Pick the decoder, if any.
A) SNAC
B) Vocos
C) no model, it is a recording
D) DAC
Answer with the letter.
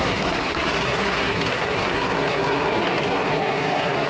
A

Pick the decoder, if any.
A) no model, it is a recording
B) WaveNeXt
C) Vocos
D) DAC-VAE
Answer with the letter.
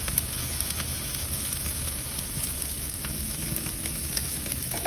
D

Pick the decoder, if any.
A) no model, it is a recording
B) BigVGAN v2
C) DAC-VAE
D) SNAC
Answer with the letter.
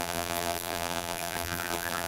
B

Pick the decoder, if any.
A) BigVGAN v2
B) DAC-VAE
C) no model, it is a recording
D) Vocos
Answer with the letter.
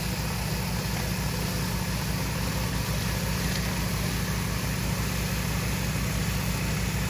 C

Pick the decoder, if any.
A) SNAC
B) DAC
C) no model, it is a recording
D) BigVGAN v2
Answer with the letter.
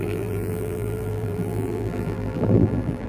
D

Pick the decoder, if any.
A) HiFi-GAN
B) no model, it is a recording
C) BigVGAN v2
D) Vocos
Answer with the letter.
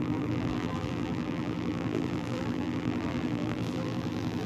C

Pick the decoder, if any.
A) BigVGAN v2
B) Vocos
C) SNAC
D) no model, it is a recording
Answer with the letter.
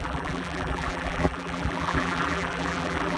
A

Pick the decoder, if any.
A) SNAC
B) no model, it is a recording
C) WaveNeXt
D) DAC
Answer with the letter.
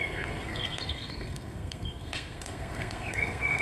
A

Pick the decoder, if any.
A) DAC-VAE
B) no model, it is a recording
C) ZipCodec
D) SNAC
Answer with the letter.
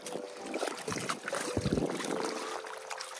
B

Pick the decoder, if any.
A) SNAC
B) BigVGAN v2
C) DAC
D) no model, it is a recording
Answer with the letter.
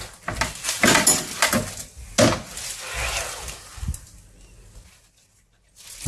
D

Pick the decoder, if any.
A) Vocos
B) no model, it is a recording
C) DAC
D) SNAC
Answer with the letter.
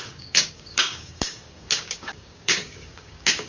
C